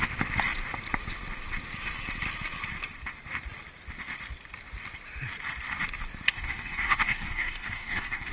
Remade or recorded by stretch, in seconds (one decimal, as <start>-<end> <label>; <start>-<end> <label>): 0.0-6.3 recorded; 6.3-8.3 remade